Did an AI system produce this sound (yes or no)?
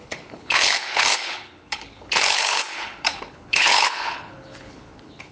yes